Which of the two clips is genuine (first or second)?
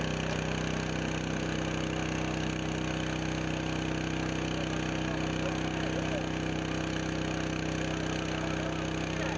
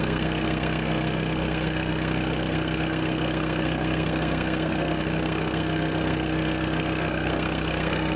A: first